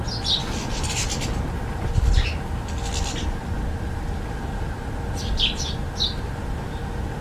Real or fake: real